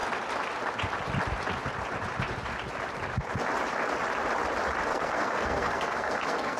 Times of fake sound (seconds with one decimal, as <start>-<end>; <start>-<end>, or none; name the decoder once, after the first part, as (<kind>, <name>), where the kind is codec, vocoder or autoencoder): 4.9-6.6 (codec, SNAC)